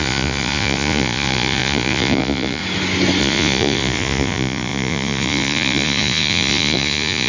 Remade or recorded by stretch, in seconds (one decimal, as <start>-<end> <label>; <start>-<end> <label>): 0.0-2.6 remade; 2.6-3.2 recorded; 3.2-7.3 remade

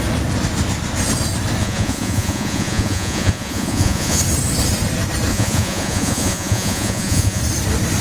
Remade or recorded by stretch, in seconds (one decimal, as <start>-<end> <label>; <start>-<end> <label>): 0.0-1.6 recorded; 1.6-4.2 remade; 4.2-5.3 recorded; 5.3-7.4 remade; 7.4-8.0 recorded

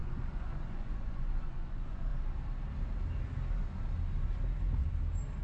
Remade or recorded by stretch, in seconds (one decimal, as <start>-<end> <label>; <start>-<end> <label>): 0.0-2.1 remade; 2.1-5.4 recorded

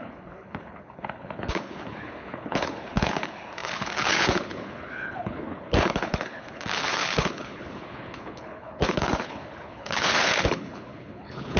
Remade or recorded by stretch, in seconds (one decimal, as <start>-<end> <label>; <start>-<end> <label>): 0.0-11.6 remade